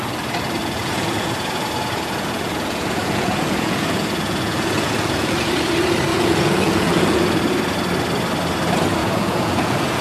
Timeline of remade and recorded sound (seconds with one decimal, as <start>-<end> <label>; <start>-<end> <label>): 0.0-0.6 recorded; 0.6-5.5 remade; 5.5-6.1 recorded; 6.1-7.2 remade; 7.2-9.0 recorded; 9.0-10.0 remade